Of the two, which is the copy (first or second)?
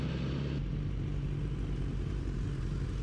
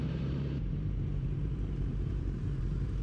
second